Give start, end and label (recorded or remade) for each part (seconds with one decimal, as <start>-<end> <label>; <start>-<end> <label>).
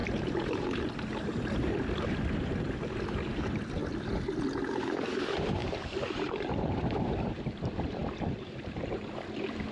0.0-3.8 remade; 3.8-4.8 recorded; 4.8-9.7 remade